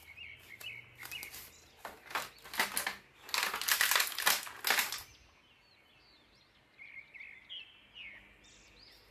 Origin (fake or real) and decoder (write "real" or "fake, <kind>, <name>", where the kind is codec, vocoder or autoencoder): real